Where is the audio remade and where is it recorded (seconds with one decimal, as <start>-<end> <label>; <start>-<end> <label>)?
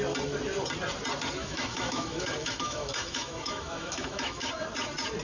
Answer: 0.0-1.4 recorded; 1.4-4.5 remade; 4.5-5.2 recorded